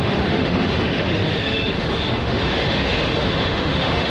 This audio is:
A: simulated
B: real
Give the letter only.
A